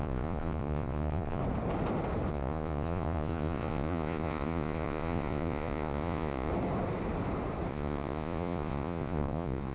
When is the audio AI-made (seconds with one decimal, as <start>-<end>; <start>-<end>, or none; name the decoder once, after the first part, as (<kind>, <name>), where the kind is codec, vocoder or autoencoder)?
0.0-1.4 (vocoder, Vocos); 2.3-6.5; 7.7-9.7